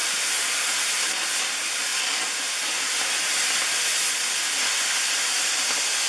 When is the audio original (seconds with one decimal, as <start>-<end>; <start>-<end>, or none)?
0.0-6.1